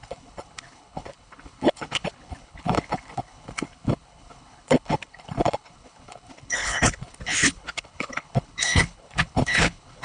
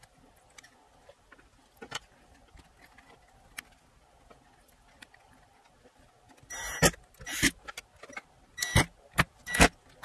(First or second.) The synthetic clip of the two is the first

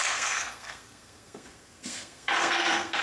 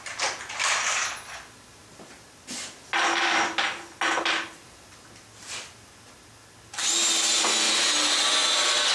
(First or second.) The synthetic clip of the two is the first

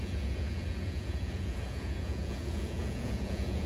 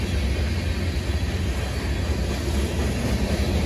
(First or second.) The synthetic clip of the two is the first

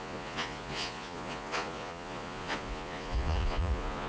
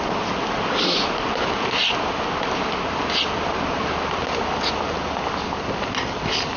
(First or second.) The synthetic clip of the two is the first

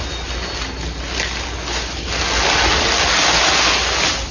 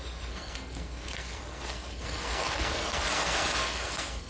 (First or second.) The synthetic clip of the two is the second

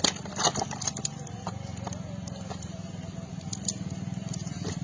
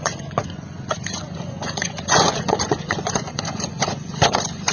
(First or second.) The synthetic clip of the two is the second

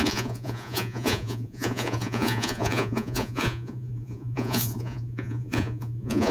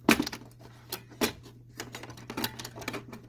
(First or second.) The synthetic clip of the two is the first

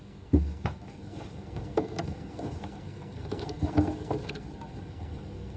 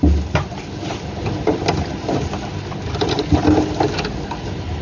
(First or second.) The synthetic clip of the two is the first